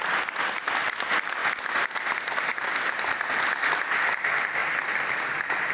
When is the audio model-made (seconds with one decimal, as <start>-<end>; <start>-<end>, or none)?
none